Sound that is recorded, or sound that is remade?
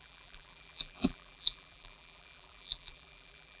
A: remade